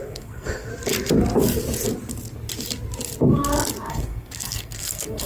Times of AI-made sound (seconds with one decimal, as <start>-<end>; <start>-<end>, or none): 0.0-0.7; 3.9-5.3